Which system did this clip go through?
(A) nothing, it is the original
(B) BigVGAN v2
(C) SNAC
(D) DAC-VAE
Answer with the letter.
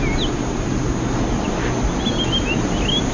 A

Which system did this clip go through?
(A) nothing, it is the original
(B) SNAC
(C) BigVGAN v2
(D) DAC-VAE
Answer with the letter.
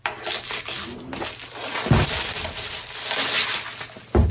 A